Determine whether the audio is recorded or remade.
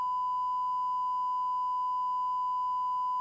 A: recorded